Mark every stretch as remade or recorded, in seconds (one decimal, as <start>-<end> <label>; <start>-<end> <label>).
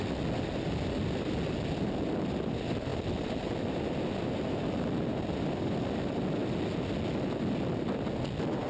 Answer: 0.0-8.7 recorded